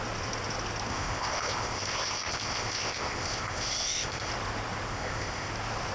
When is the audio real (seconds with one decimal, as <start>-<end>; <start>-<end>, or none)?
0.0-0.9; 4.3-4.9; 5.5-5.9